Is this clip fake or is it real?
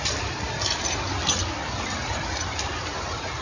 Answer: fake